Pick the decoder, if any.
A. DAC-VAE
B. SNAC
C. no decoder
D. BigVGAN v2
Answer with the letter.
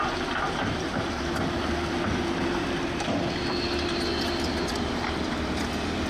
D